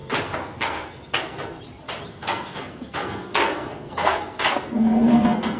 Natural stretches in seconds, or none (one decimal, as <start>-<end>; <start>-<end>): 1.6-2.1